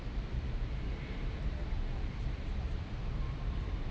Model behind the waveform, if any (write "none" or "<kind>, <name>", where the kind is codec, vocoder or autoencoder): vocoder, BigVGAN v2